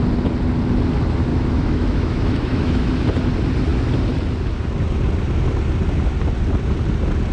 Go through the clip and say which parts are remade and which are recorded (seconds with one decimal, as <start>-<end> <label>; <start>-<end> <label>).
0.0-1.3 recorded; 1.3-2.9 remade; 2.9-7.3 recorded